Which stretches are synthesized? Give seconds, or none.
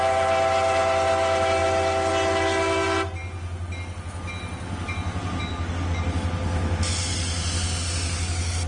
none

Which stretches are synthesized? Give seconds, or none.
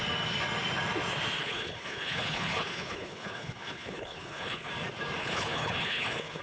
1.4-4.7 (codec, HILCodec); 5.2-6.4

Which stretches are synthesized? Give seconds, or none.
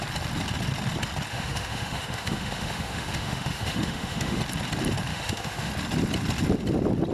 1.3-4.4 (autoencoder, DAC-VAE); 5.1-5.7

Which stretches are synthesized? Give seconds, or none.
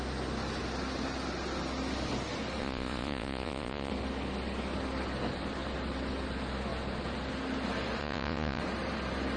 2.6-3.9 (vocoder, Vocos); 8.0-8.6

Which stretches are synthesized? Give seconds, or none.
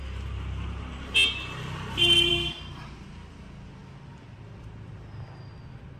none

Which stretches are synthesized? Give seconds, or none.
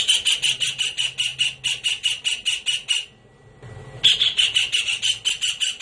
none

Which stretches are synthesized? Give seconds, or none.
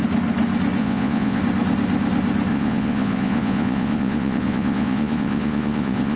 0.8-1.4 (vocoder, Vocos); 2.5-6.2